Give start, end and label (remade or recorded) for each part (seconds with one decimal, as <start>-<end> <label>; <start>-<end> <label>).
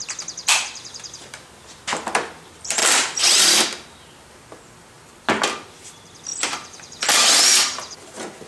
0.0-8.5 recorded